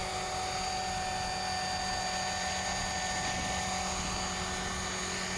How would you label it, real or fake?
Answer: real